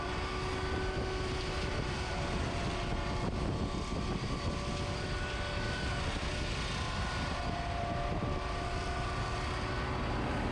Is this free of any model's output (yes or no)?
yes